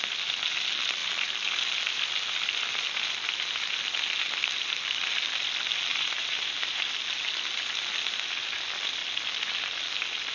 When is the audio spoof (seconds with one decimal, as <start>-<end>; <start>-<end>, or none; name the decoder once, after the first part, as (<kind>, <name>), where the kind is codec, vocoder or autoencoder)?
5.9-6.8 (vocoder, BigVGAN v2)